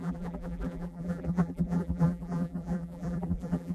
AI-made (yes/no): yes